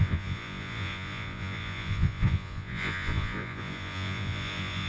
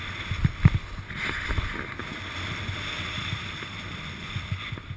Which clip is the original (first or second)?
second